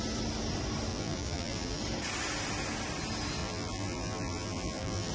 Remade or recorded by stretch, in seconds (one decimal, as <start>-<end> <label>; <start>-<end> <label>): 0.0-0.9 recorded; 0.9-1.8 remade; 1.8-3.4 recorded; 3.4-5.1 remade